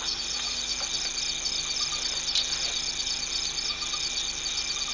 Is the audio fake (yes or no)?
no